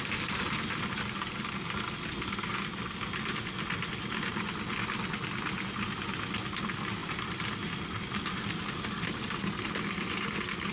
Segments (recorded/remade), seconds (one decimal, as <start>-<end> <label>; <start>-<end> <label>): 0.0-10.7 recorded